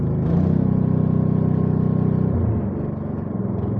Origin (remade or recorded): recorded